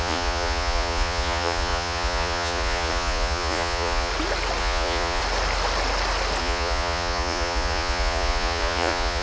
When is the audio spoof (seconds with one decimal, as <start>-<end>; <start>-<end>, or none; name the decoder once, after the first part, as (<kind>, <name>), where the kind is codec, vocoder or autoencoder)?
0.0-4.1 (vocoder, Vocos); 4.6-5.2; 6.4-9.2